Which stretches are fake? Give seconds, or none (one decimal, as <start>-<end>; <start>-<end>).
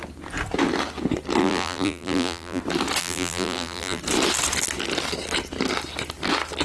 1.4-2.6; 3.0-4.0